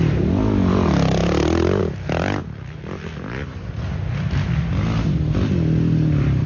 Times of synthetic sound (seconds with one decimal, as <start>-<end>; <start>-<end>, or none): none